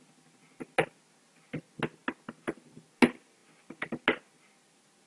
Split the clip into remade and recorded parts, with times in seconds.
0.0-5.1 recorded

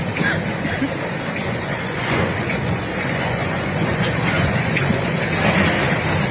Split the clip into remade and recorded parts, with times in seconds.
0.0-1.4 recorded; 1.4-5.2 remade; 5.2-6.3 recorded

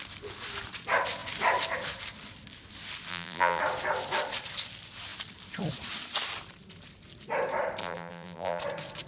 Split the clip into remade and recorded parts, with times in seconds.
0.0-3.1 recorded; 3.1-3.6 remade; 3.6-7.8 recorded; 7.8-8.6 remade; 8.6-9.1 recorded